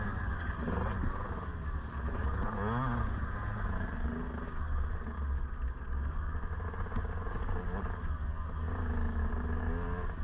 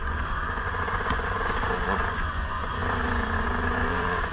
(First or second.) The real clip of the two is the first